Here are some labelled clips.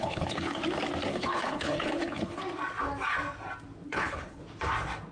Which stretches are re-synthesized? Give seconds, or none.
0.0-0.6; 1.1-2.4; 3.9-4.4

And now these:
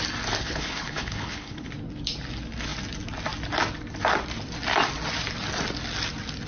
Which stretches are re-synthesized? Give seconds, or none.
0.4-1.7

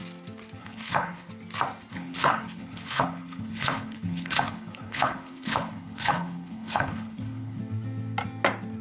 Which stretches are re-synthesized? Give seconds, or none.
0.6-1.3; 1.9-7.6

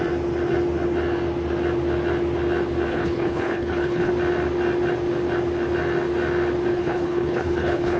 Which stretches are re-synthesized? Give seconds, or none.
2.9-4.1; 6.7-8.0

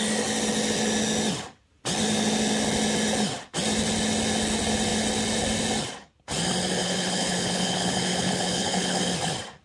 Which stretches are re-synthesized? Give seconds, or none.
6.8-9.0

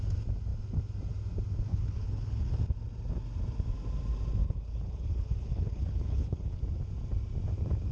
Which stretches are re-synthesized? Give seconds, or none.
1.7-2.5; 4.4-6.6

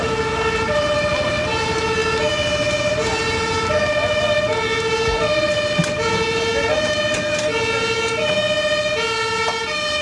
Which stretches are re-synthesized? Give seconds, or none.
none

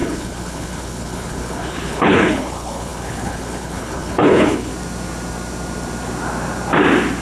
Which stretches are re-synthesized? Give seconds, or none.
0.0-4.7